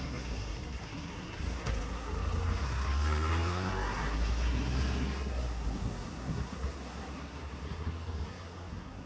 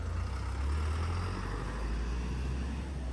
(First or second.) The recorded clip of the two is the second